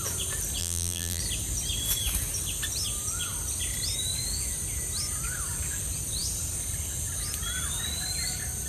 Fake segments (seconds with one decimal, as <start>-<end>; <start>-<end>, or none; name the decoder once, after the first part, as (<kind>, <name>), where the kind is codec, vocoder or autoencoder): 0.6-1.2 (vocoder, BigVGAN v2)